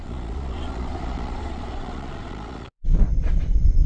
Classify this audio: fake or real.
fake